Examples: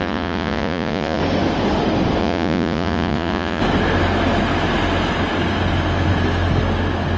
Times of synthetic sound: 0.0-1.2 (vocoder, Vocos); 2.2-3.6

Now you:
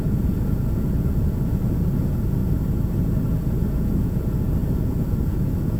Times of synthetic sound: 0.0-2.4 (vocoder, Vocos); 3.8-5.8

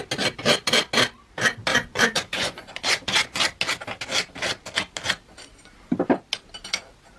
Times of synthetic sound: 1.7-3.4 (vocoder, Vocos)

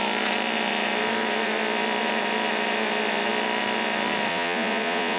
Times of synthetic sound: 4.3-5.2 (vocoder, Vocos)

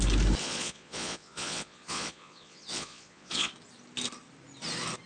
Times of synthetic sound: 0.4-3.5 (vocoder, Vocos)

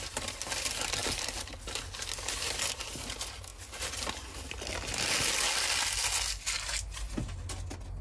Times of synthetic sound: none

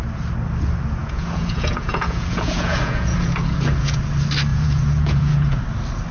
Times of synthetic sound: 1.0-4.0 (vocoder, Vocos); 4.5-5.6